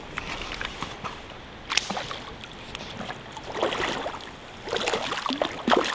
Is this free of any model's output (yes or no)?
yes